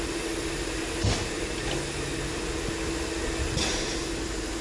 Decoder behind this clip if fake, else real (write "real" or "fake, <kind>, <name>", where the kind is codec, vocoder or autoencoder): real